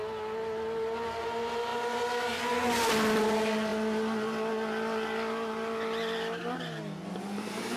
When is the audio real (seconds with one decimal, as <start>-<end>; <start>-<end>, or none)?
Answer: 0.0-1.7; 2.4-7.8